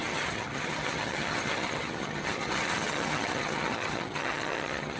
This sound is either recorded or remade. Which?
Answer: remade